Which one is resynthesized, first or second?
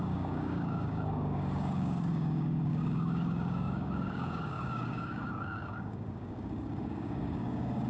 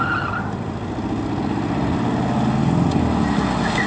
first